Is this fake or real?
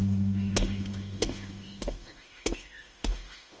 fake